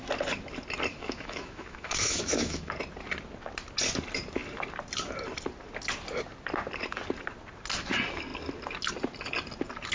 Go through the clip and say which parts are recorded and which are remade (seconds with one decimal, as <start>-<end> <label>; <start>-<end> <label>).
0.0-0.9 recorded; 0.9-2.7 remade; 2.7-9.9 recorded